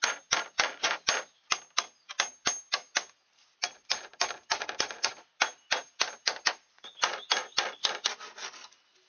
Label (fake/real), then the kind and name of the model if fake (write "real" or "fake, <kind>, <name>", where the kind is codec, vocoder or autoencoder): real